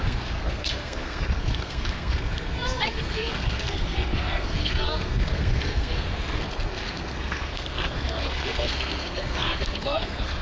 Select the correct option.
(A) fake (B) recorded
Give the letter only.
A